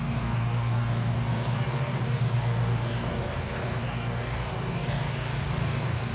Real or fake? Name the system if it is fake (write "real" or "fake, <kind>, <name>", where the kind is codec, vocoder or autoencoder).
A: fake, codec, DAC